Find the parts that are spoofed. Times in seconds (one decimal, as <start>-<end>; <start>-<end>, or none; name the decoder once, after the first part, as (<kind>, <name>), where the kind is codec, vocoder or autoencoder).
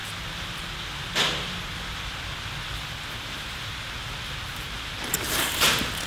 3.1-6.1 (vocoder, BigVGAN v2)